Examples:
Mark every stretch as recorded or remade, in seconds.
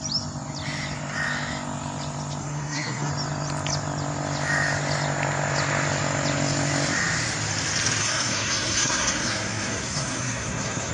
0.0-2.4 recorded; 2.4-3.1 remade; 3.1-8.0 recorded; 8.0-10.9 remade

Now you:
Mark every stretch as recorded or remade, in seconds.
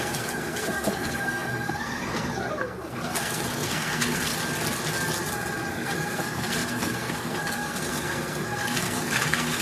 0.0-4.3 remade; 4.3-5.7 recorded; 5.7-9.6 remade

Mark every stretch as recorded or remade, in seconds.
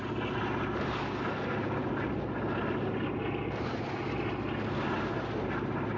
0.0-6.0 recorded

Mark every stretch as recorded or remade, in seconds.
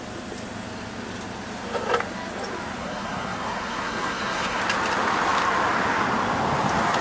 0.0-2.8 recorded; 2.8-4.6 remade; 4.6-7.0 recorded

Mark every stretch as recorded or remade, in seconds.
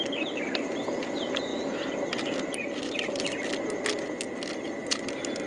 0.0-5.5 recorded